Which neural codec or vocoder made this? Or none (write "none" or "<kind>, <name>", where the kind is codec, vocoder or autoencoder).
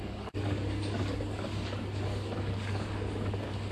codec, DAC